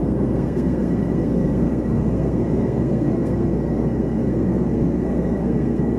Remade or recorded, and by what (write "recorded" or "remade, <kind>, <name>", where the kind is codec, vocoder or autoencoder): remade, codec, SNAC